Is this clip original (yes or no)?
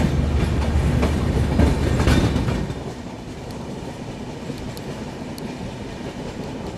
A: yes